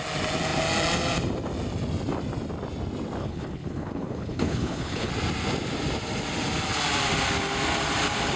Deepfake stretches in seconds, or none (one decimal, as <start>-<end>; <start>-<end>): 3.2-5.1